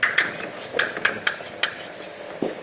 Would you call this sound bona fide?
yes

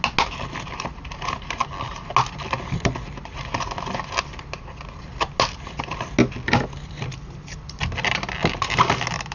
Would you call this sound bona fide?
yes